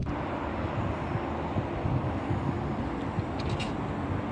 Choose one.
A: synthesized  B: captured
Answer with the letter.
B